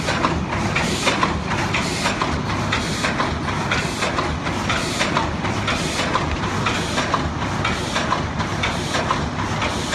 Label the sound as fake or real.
real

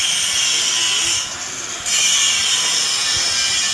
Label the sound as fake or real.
real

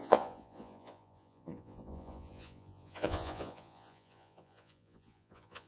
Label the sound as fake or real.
fake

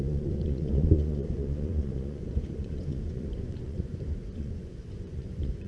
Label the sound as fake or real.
fake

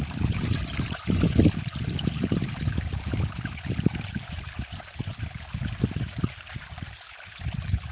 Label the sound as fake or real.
real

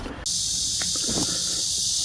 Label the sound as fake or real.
real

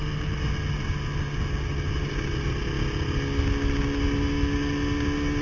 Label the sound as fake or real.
real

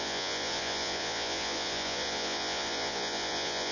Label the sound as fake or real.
fake